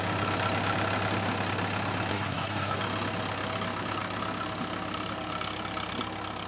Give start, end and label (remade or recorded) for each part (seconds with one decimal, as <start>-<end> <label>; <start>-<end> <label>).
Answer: 0.0-2.1 recorded; 2.1-2.8 remade; 2.8-6.5 recorded